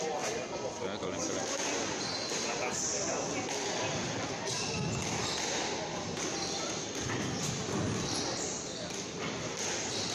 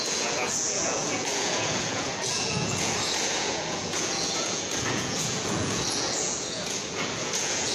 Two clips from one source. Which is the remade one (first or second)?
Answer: second